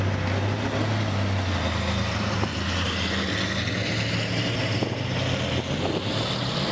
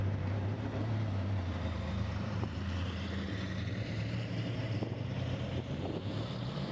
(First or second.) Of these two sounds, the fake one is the second